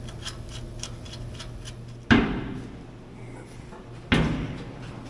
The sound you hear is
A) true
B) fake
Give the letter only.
A